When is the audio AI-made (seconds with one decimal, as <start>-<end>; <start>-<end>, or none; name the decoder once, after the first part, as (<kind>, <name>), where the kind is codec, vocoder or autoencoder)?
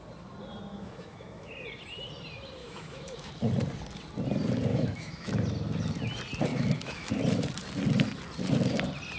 0.7-1.5 (autoencoder, DAC-VAE); 2.6-3.3; 4.7-5.3; 6.5-7.2